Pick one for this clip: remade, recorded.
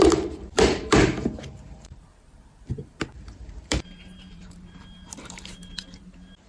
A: remade